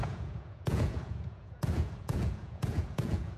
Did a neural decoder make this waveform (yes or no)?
yes